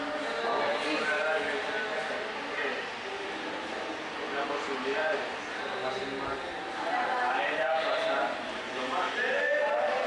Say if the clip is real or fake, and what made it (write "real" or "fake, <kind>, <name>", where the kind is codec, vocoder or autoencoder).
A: real